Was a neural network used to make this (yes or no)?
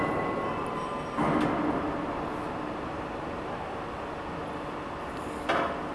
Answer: no